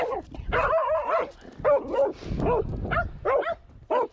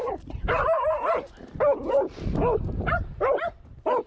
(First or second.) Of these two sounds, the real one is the first